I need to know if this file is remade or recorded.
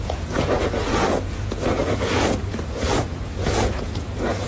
remade